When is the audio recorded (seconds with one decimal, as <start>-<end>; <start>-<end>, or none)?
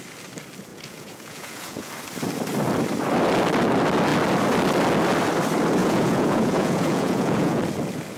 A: 0.0-0.7; 1.9-5.8; 7.6-8.2